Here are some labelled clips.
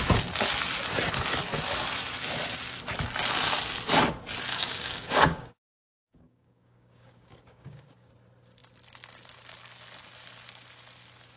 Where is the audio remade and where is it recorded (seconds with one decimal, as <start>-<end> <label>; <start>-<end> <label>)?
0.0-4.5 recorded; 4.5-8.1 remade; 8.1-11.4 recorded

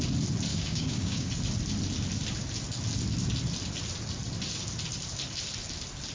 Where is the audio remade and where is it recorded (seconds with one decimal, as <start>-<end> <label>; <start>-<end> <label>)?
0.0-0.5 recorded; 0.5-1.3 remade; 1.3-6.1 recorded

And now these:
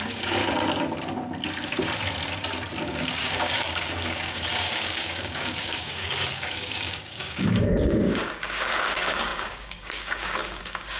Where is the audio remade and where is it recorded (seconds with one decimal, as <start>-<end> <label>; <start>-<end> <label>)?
0.0-0.4 remade; 0.4-2.8 recorded; 2.8-11.0 remade

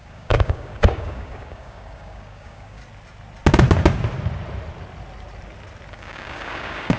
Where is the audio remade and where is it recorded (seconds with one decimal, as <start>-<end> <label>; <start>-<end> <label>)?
0.0-2.8 remade; 2.8-5.9 recorded; 5.9-7.0 remade

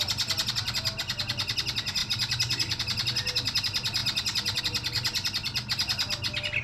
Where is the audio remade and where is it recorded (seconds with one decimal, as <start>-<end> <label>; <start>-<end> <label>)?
0.0-6.6 recorded

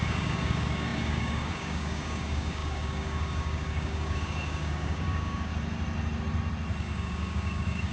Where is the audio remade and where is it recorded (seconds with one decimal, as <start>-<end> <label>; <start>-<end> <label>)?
0.0-5.5 remade; 5.5-6.8 recorded; 6.8-7.9 remade

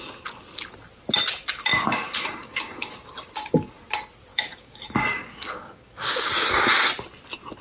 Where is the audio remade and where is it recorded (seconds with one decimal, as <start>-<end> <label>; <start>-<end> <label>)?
0.0-1.7 recorded; 1.7-2.9 remade; 2.9-4.3 recorded; 4.3-6.3 remade; 6.3-7.6 recorded